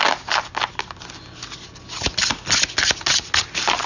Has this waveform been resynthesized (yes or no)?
no